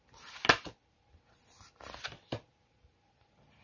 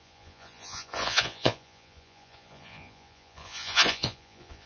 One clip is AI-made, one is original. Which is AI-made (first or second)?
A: second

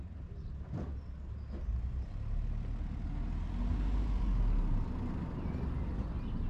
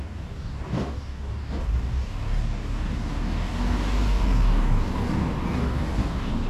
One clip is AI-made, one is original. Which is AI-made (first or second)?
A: second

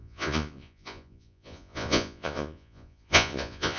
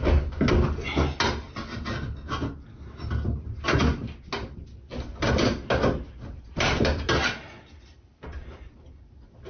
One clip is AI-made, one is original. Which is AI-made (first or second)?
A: first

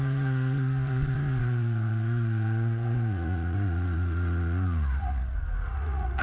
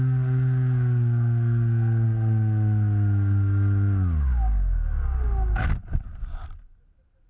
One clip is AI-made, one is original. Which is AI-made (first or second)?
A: first